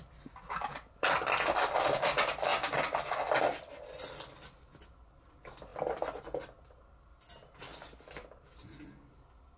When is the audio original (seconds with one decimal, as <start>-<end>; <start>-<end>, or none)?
0.0-9.6